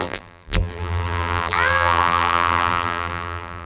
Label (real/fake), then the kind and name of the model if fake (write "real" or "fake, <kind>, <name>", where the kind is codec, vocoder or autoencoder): fake, vocoder, BigVGAN v2